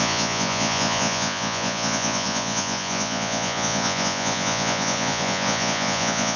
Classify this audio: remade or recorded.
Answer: remade